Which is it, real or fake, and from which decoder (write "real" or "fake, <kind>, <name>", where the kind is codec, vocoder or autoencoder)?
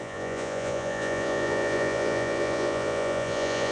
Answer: fake, vocoder, Vocos